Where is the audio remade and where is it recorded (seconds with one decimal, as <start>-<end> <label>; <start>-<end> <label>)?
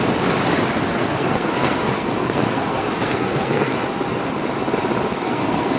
0.0-0.9 recorded; 0.9-3.8 remade; 3.8-5.1 recorded; 5.1-5.8 remade